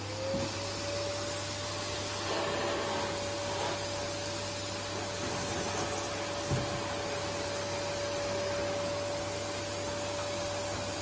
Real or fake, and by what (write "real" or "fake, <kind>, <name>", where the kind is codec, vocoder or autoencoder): real